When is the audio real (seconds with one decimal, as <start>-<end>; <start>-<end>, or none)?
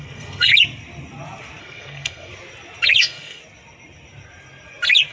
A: 0.5-1.6; 2.3-3.0; 3.4-5.1